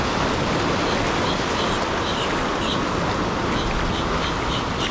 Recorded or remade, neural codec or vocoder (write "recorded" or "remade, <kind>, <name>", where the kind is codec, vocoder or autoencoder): recorded